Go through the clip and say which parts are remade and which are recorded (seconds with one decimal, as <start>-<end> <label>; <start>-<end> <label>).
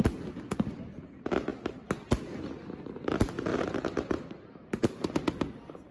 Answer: 0.0-3.5 recorded; 3.5-4.4 remade; 4.4-5.9 recorded